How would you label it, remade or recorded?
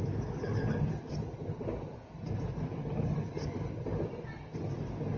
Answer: recorded